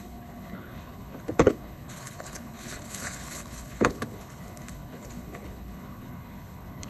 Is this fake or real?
fake